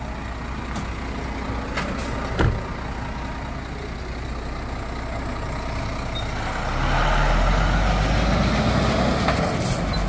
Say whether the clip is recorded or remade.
recorded